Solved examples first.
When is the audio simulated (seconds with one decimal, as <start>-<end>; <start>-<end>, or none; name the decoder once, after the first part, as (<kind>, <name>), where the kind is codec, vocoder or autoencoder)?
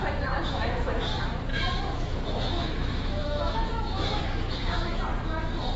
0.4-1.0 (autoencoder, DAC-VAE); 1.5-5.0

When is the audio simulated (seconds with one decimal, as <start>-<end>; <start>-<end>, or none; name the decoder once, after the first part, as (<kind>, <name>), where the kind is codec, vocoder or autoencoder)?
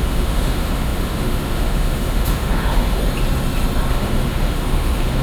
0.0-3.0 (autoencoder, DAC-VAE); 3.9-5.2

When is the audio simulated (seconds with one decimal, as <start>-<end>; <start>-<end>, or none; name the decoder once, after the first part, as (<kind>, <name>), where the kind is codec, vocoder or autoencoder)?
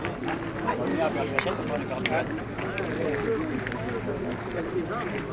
0.9-1.4 (autoencoder, DAC-VAE)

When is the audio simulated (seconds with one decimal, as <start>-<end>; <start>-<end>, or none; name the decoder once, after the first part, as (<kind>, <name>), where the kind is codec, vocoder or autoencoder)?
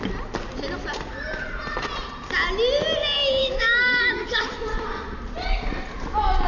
3.4-4.2 (autoencoder, DAC-VAE)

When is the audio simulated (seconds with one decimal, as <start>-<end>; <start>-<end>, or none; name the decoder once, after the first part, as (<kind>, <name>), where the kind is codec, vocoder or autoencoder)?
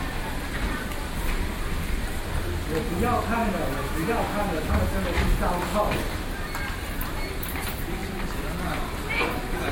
3.4-4.8 (autoencoder, DAC-VAE)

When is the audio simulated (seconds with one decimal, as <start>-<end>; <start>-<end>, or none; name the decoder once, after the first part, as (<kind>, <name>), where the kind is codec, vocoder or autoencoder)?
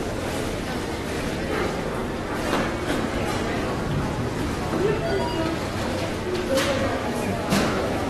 7.0-8.1 (autoencoder, DAC-VAE)